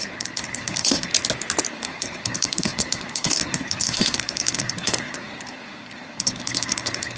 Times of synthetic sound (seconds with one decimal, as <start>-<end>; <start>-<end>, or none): 0.0-1.1; 1.7-7.2